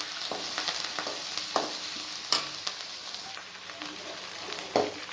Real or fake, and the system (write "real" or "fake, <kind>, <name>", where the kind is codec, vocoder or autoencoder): real